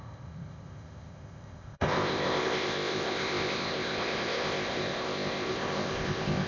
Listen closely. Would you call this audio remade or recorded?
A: remade